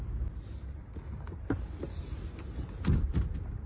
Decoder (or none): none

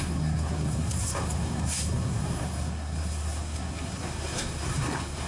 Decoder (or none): codec, SNAC